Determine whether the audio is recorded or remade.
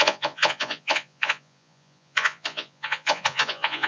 remade